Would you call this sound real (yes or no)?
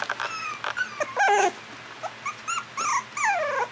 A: yes